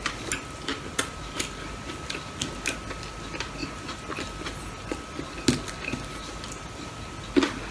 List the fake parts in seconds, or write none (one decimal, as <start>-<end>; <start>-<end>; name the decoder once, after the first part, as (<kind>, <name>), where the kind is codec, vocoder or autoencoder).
none